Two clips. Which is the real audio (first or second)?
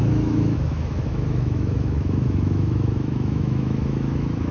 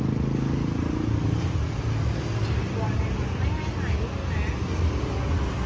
second